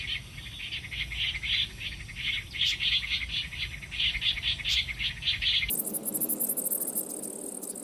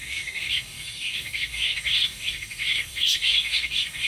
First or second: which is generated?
second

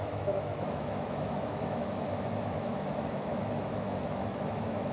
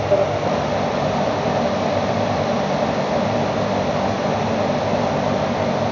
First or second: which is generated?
first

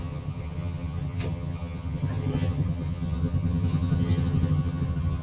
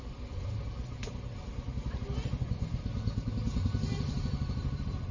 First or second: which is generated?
first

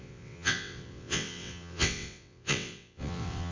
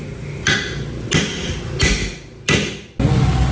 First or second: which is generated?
first